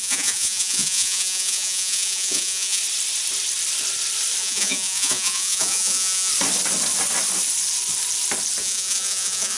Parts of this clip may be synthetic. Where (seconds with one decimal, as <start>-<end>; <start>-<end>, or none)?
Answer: 0.0-2.8; 4.4-6.3; 8.6-9.6